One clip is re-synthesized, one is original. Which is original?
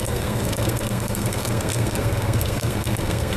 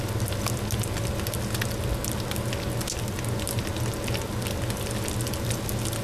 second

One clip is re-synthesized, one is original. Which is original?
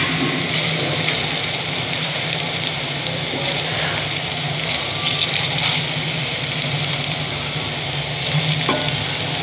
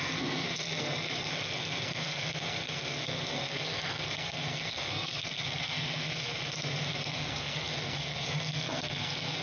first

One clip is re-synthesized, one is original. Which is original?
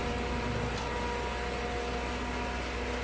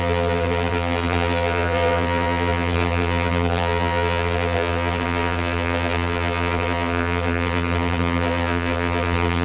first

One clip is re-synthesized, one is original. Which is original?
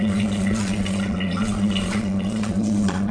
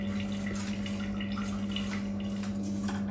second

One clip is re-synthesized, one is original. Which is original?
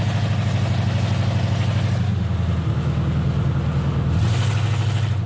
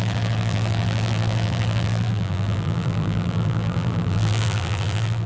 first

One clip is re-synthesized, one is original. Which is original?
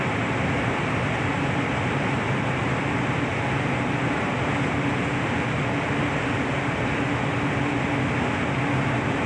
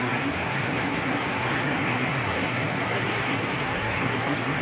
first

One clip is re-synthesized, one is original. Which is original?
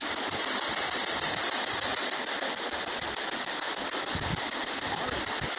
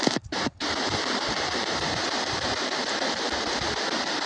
first